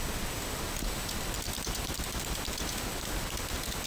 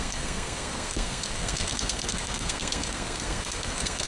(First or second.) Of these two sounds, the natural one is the first